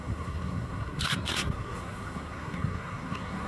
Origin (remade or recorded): remade